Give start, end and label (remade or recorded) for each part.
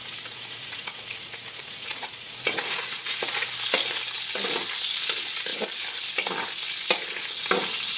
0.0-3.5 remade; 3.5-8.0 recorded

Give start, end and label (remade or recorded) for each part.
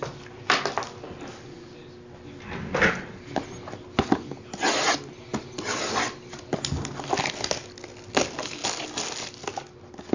0.0-10.1 recorded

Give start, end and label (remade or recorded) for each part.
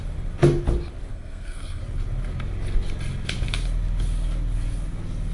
0.0-1.1 recorded; 1.1-1.8 remade; 1.8-5.3 recorded